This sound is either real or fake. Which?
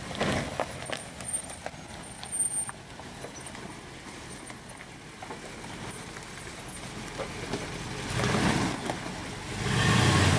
real